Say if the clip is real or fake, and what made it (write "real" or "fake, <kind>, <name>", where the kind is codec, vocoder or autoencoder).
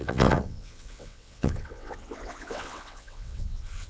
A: fake, vocoder, WaveNeXt